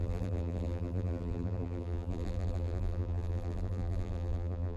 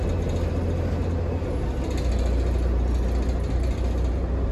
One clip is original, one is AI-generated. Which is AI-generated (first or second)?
first